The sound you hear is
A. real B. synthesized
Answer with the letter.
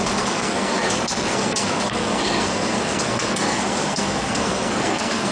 B